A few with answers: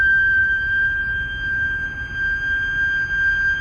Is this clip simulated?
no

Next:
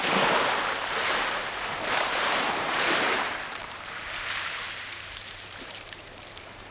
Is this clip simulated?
yes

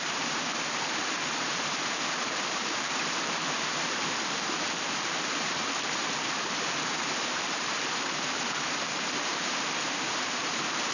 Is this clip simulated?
yes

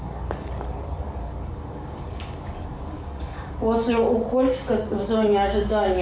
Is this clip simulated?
yes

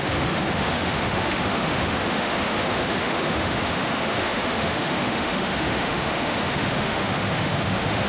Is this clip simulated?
yes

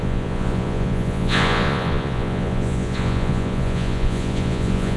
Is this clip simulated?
yes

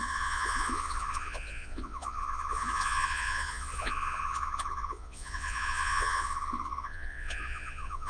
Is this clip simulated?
yes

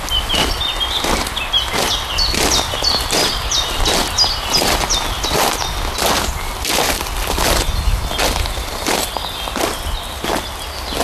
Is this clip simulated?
no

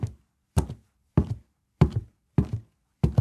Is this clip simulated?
no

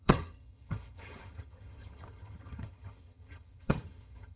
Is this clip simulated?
yes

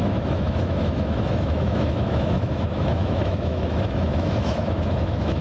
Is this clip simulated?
yes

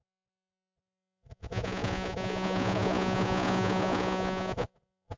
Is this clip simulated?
yes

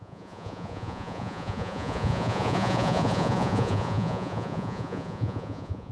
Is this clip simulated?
yes